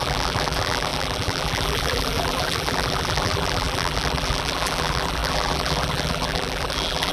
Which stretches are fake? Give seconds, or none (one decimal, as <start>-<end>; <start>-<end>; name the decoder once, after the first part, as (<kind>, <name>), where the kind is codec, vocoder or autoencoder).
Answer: 0.0-7.1 (vocoder, BigVGAN v2)